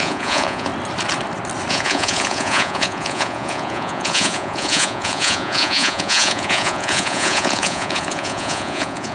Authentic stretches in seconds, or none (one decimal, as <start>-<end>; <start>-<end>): 0.7-1.7